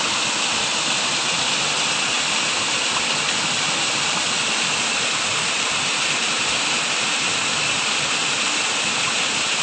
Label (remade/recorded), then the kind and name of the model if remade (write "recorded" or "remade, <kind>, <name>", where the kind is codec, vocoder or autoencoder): recorded